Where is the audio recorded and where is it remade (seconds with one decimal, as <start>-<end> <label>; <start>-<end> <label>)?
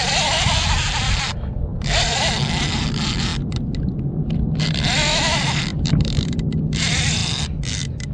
0.0-1.7 remade; 1.7-2.2 recorded; 2.2-3.3 remade; 3.3-4.1 recorded; 4.1-8.1 remade